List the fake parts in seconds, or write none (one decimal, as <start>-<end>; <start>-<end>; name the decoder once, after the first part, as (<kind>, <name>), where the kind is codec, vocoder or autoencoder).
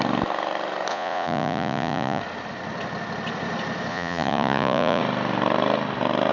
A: 0.9-2.2 (vocoder, Vocos); 3.9-5.0